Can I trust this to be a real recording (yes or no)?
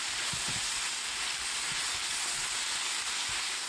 yes